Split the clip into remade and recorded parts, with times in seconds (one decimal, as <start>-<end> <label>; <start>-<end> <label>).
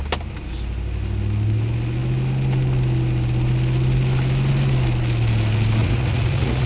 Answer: 0.0-5.8 recorded; 5.8-6.7 remade